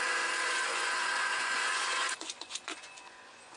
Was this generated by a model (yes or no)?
yes